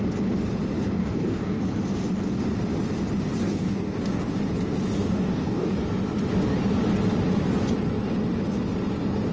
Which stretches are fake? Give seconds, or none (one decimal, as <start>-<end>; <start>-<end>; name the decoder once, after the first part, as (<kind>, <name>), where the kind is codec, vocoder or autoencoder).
1.0-1.6 (codec, DAC); 3.4-4.4; 5.0-5.8

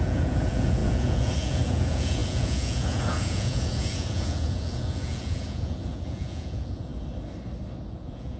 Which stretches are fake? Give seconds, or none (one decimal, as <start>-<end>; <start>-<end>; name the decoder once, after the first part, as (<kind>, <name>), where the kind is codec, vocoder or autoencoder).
0.0-6.9 (vocoder, Vocos); 7.9-8.4

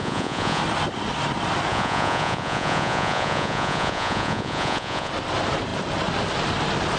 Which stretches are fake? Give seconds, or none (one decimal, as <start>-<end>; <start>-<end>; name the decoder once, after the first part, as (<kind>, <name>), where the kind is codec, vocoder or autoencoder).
0.0-0.6 (vocoder, Vocos); 1.7-5.1